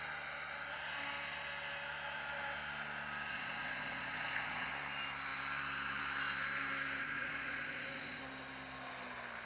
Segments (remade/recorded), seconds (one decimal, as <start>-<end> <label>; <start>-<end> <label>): 0.0-3.3 recorded; 3.3-4.7 remade; 4.7-7.0 recorded; 7.0-8.2 remade; 8.2-9.5 recorded